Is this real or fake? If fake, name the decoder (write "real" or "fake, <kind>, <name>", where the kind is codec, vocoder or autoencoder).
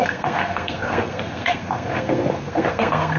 fake, codec, SNAC